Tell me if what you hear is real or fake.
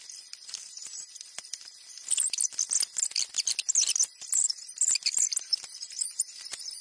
real